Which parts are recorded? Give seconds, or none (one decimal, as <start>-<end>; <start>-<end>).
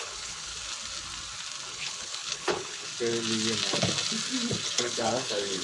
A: 0.5-1.7; 2.9-4.8